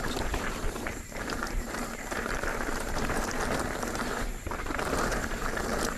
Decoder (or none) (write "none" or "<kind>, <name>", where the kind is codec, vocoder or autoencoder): vocoder, BigVGAN v2